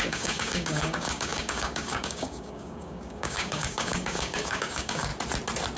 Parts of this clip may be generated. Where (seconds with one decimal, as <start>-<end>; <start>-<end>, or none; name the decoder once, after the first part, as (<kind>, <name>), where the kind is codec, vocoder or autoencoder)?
0.0-5.1 (codec, DAC)